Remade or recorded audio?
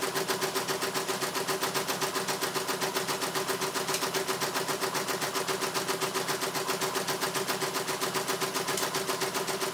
recorded